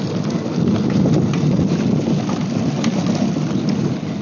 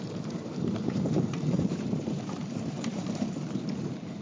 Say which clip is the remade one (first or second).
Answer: second